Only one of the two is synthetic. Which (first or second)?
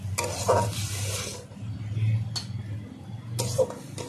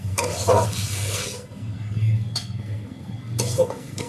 second